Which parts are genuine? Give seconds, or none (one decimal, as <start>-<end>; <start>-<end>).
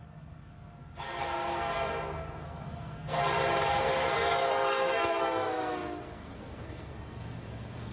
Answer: 3.2-3.8